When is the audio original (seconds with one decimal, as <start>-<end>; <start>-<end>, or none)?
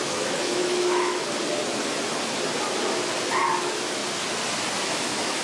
1.2-3.6; 4.0-4.8